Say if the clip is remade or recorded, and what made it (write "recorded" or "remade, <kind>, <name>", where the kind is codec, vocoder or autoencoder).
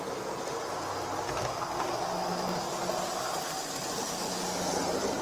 recorded